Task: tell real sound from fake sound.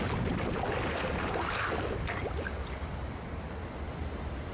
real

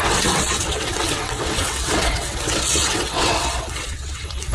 fake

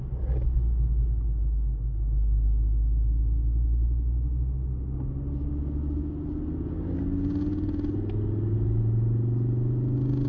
real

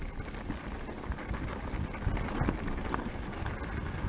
real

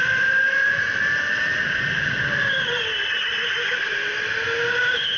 real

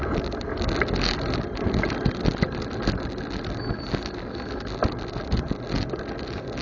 real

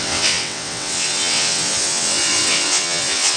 fake